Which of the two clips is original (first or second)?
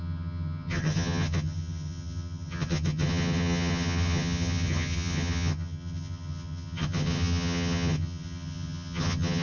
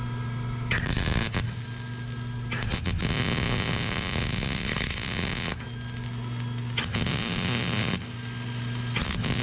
second